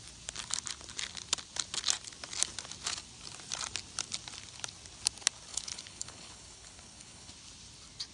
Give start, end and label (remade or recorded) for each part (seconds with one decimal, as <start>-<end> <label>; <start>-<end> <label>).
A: 0.0-5.5 recorded; 5.5-7.3 remade; 7.3-8.1 recorded